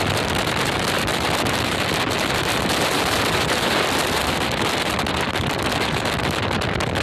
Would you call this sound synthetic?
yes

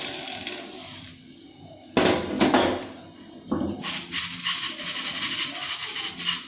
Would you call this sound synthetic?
no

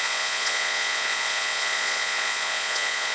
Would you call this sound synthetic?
yes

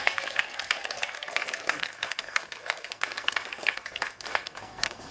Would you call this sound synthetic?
yes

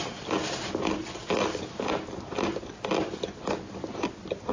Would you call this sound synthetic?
no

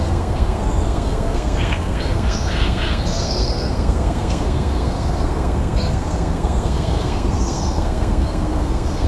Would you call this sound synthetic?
yes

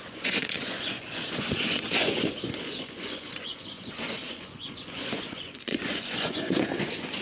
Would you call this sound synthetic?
yes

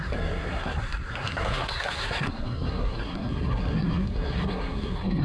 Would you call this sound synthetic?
yes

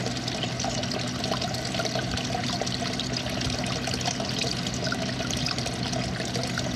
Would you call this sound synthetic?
no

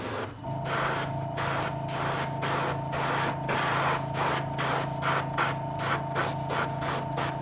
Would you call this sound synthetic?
no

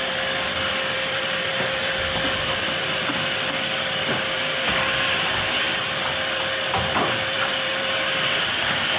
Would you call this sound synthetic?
yes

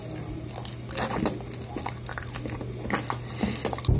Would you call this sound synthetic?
no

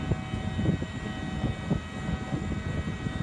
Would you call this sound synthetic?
no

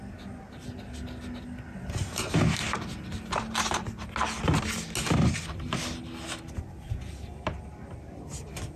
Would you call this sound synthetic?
no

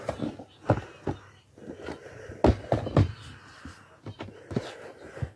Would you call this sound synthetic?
no